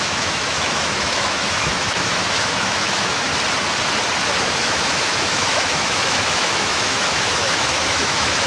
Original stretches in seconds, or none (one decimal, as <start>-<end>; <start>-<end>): 3.3-4.4